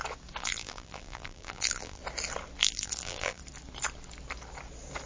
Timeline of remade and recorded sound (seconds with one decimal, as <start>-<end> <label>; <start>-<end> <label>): 0.0-0.4 recorded; 0.4-2.0 remade; 2.0-2.6 recorded; 2.6-3.4 remade; 3.4-5.1 recorded